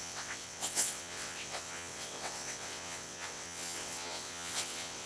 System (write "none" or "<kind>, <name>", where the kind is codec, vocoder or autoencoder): vocoder, WaveNeXt